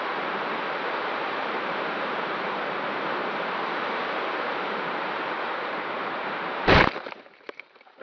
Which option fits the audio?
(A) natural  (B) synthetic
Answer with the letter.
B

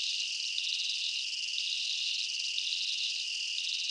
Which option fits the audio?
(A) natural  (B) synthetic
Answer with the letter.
A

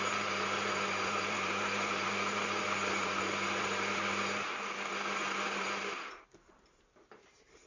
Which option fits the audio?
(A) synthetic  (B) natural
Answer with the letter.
A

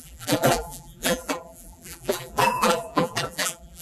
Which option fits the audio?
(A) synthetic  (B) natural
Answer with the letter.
A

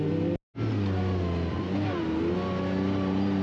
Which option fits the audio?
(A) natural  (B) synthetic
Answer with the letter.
A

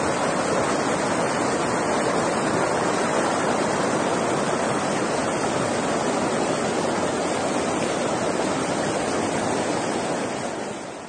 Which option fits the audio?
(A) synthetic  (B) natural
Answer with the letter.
B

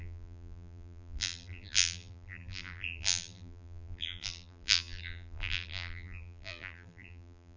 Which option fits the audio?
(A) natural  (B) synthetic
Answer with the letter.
B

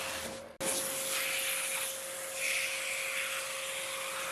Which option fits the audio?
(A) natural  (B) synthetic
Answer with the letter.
A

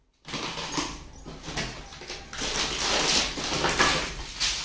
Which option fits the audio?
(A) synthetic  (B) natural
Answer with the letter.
B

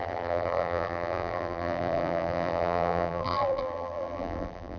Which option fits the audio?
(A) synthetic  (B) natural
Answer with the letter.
A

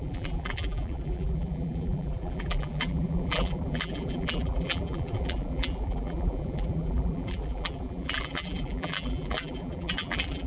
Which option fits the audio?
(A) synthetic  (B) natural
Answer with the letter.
A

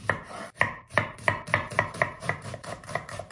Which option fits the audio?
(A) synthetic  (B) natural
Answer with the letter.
A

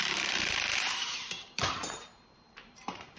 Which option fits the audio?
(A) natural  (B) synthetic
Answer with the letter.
B